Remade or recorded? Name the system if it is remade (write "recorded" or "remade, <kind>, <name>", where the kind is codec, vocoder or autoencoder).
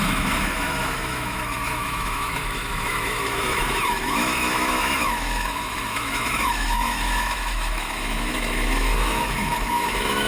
remade, autoencoder, DAC-VAE